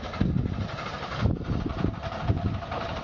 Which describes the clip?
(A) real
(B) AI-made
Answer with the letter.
B